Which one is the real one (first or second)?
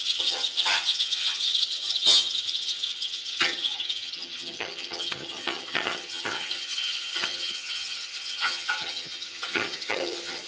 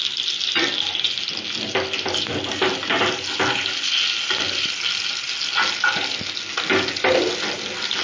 second